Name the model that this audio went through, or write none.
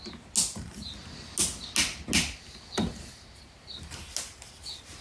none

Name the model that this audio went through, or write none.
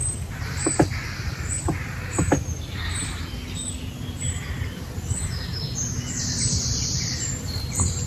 vocoder, BigVGAN v2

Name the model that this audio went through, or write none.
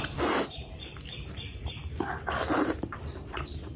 vocoder, BigVGAN v2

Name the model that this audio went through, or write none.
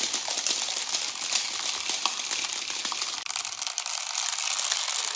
none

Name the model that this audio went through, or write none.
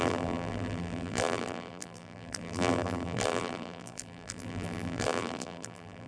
vocoder, BigVGAN v2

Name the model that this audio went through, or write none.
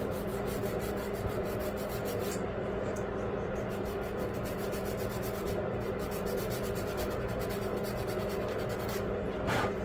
vocoder, BigVGAN v2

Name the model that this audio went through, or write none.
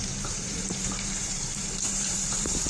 vocoder, BigVGAN v2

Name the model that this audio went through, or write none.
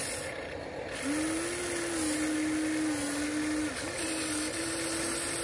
none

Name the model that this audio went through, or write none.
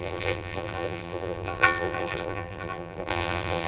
vocoder, BigVGAN v2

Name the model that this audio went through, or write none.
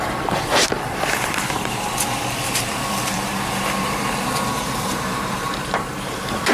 vocoder, BigVGAN v2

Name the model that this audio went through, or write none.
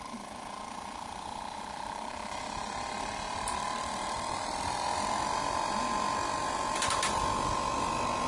none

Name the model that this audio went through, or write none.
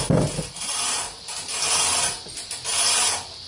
none